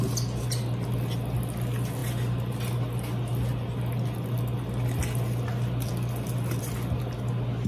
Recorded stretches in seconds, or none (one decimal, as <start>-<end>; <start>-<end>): 0.0-7.7